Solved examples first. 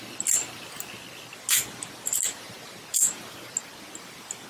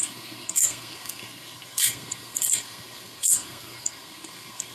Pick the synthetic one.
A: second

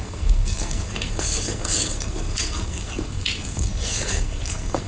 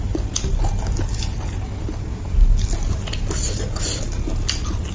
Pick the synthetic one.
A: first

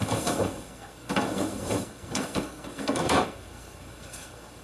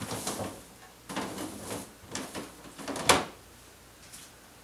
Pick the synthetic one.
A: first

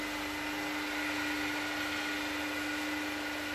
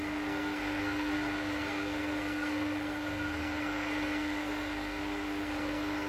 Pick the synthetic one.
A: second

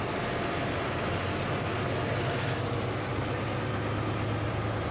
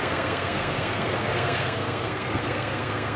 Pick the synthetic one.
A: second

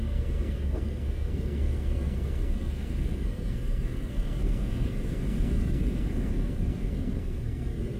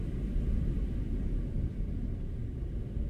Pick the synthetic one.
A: first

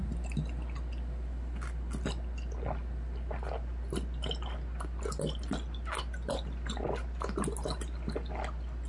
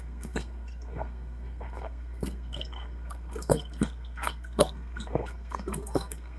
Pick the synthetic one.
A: second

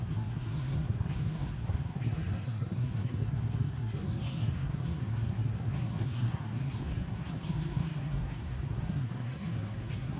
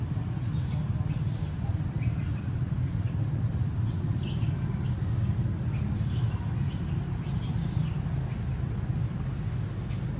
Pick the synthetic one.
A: first